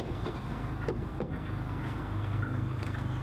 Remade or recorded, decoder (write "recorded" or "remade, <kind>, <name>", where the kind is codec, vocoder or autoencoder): remade, codec, SNAC